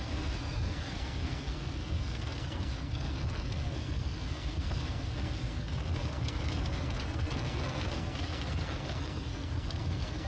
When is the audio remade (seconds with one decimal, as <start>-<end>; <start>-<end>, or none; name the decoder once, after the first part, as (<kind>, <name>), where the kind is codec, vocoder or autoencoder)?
0.0-10.3 (codec, SNAC)